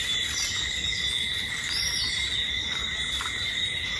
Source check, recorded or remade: recorded